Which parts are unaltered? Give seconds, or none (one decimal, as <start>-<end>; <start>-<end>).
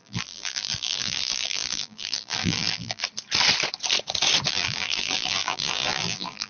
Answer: 3.0-4.5